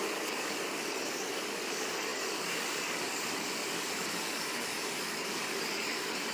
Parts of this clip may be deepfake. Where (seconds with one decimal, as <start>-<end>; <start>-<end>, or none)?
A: 0.0-6.3

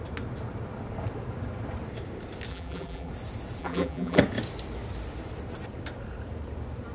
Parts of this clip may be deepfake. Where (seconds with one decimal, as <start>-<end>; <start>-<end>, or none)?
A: 2.5-3.1; 3.6-4.2

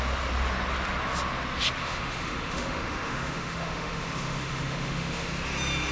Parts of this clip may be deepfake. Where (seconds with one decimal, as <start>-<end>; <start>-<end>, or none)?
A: 1.8-5.3

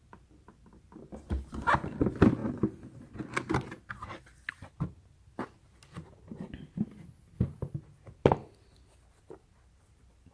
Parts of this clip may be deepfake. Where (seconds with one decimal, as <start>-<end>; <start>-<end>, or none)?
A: none

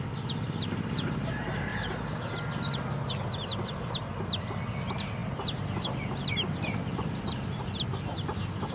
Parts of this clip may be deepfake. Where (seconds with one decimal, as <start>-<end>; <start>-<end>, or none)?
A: none